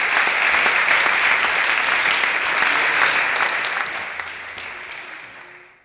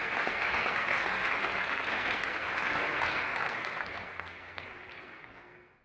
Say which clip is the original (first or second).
first